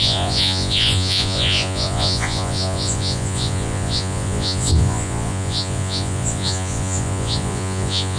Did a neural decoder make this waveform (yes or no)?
yes